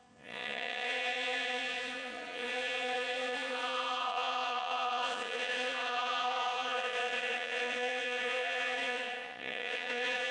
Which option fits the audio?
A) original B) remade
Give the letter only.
B